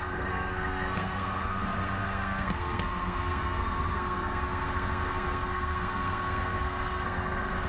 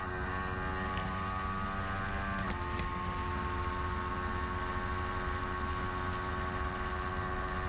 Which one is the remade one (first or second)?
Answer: first